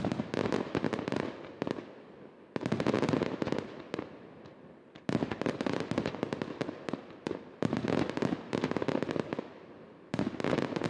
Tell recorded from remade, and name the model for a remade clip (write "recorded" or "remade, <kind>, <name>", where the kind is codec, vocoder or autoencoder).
recorded